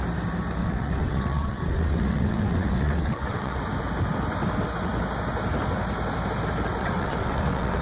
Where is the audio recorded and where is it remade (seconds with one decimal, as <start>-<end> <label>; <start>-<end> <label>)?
0.0-0.6 recorded; 0.6-3.6 remade; 3.6-6.8 recorded; 6.8-7.8 remade